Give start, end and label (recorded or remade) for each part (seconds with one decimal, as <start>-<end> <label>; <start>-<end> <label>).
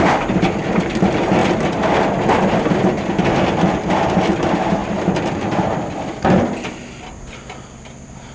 0.0-1.4 recorded; 1.4-2.1 remade; 2.1-4.8 recorded; 4.8-6.7 remade; 6.7-8.3 recorded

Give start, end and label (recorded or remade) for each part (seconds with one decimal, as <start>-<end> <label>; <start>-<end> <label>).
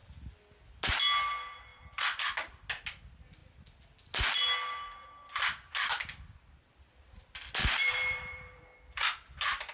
0.0-1.7 recorded; 1.7-2.3 remade; 2.3-7.6 recorded; 7.6-8.6 remade; 8.6-9.7 recorded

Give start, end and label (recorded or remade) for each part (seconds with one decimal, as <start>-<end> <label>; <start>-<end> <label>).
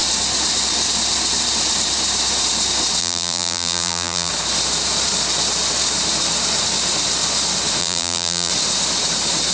0.0-3.0 recorded; 3.0-4.3 remade; 4.3-7.8 recorded; 7.8-8.5 remade; 8.5-9.5 recorded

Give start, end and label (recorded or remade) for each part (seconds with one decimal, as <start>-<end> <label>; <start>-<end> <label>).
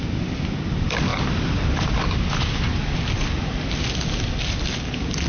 0.0-5.3 recorded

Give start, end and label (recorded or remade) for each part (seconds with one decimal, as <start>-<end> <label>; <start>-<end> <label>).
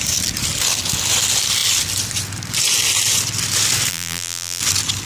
0.0-3.9 recorded; 3.9-4.6 remade; 4.6-5.1 recorded